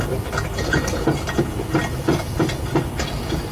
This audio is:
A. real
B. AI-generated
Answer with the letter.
A